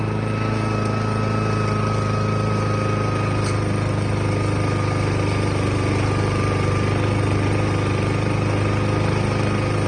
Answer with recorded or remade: recorded